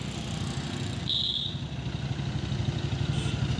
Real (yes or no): yes